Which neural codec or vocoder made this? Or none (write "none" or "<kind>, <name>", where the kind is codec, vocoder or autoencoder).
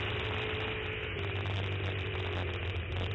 none